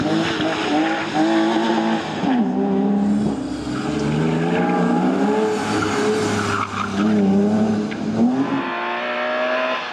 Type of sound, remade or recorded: recorded